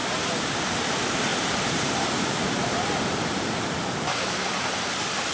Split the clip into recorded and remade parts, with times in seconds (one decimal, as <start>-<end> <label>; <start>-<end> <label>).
0.0-1.3 recorded; 1.3-4.5 remade; 4.5-5.3 recorded